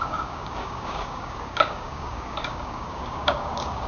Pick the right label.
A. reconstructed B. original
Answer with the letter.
A